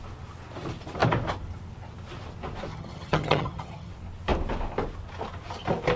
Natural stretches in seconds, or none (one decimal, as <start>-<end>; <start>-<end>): 0.0-2.7; 3.9-6.0